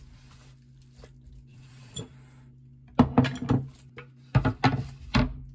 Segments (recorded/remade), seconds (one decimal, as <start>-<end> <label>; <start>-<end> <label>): 0.0-1.5 recorded; 1.5-2.0 remade; 2.0-5.5 recorded